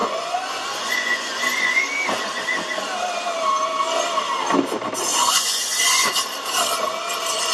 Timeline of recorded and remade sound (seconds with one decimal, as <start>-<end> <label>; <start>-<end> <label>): 0.0-1.9 remade; 1.9-5.1 recorded; 5.1-6.1 remade; 6.1-7.5 recorded